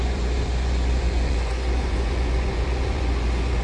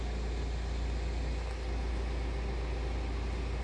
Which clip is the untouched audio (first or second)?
second